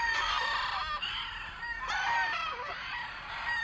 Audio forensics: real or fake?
real